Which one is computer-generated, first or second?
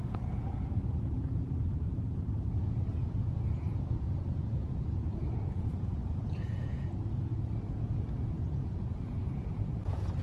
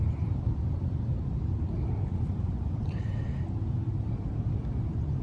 first